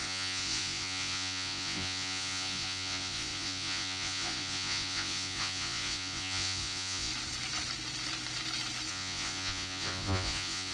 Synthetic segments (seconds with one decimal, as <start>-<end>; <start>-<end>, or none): 0.0-7.1; 8.9-10.7